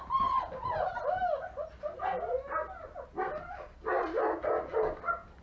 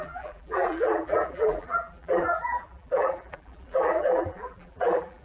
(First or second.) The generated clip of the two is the second